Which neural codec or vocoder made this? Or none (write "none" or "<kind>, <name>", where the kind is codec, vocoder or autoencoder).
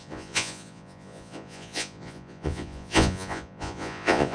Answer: vocoder, Vocos